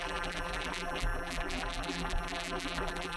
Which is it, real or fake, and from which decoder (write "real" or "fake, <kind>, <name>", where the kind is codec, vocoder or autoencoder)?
fake, vocoder, BigVGAN v2